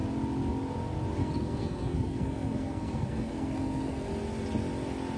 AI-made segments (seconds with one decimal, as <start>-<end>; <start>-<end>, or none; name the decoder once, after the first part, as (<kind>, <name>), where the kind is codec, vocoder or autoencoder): 1.2-4.1 (codec, SNAC)